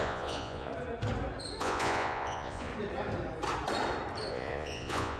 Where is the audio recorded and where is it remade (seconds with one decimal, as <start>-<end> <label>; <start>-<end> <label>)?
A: 0.0-0.7 remade; 0.7-1.6 recorded; 1.6-2.7 remade; 2.7-4.3 recorded; 4.3-5.2 remade

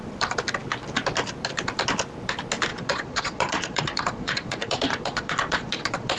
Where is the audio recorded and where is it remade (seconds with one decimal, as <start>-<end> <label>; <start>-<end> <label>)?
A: 0.0-2.7 recorded; 2.7-6.2 remade

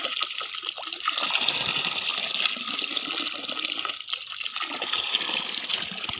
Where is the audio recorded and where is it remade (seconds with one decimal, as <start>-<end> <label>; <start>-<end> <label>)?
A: 0.0-6.2 recorded

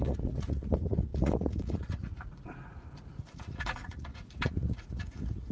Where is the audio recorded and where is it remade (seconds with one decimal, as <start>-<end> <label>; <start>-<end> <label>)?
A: 0.0-5.5 remade

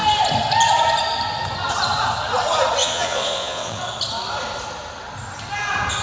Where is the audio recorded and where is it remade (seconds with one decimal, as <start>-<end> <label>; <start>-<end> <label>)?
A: 0.0-2.8 recorded; 2.8-3.8 remade; 3.8-6.0 recorded